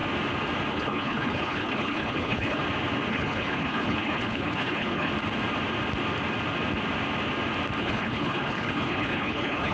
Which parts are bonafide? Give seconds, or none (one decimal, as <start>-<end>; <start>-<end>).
0.0-0.7; 2.6-3.1; 5.1-7.8